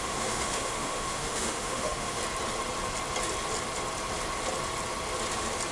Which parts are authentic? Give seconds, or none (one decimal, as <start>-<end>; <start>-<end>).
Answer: 2.2-5.7